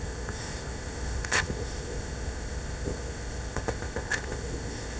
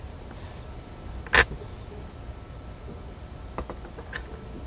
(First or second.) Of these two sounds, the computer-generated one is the first